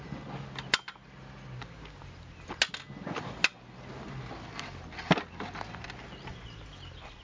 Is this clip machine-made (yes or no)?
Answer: no